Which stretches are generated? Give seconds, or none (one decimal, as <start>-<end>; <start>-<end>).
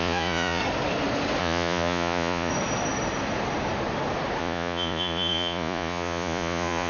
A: 0.0-0.6; 1.4-2.5; 4.4-6.9